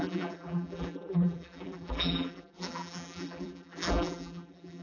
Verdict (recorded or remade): remade